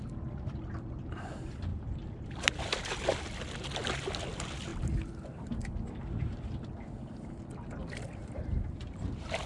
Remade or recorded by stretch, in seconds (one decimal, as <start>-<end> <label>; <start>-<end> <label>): 0.0-1.7 recorded; 1.7-3.4 remade; 3.4-7.8 recorded; 7.8-9.0 remade; 9.0-9.5 recorded